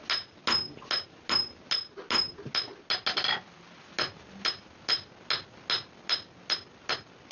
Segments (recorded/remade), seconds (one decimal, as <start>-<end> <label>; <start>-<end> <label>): 0.0-7.3 recorded